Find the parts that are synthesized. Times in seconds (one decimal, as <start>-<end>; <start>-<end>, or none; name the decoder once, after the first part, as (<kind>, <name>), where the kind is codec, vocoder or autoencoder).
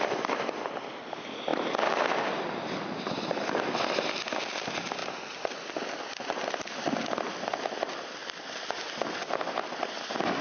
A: none